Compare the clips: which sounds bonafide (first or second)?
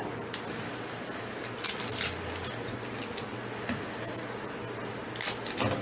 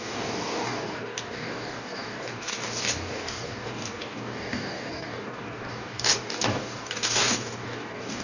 first